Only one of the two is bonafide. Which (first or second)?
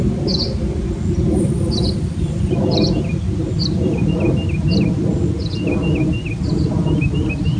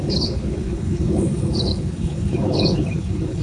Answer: first